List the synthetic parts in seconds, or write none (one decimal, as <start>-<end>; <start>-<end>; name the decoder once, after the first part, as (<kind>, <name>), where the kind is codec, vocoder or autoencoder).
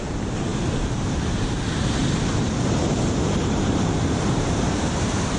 2.0-4.6 (vocoder, BigVGAN v2)